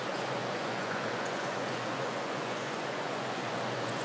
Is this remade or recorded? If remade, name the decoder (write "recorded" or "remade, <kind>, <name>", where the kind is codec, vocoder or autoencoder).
remade, vocoder, Vocos